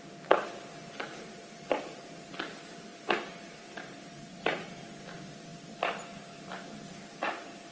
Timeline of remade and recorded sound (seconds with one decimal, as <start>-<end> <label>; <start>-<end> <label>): 0.0-2.9 recorded; 2.9-4.8 remade; 4.8-7.7 recorded